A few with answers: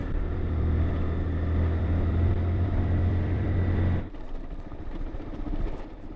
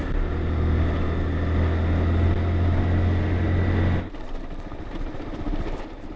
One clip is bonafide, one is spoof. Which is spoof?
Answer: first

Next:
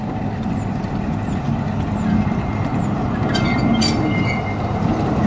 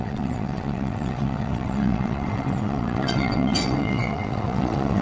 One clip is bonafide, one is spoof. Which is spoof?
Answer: second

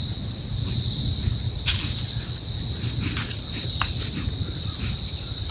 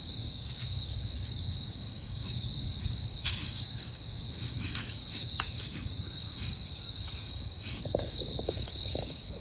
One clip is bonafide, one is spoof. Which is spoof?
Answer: second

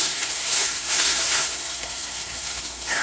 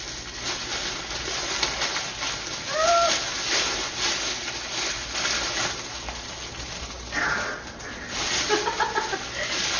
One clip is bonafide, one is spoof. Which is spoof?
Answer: first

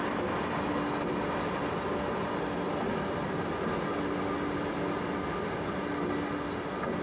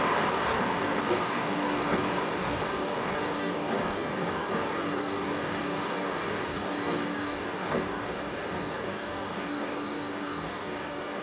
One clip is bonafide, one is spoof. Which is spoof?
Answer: second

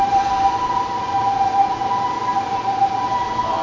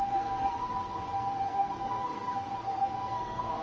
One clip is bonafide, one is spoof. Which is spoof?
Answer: second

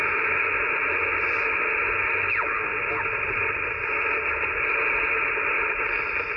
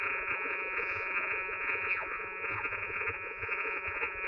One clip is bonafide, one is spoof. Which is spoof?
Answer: second